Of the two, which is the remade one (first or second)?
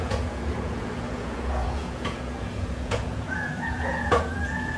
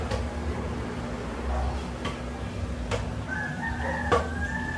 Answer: first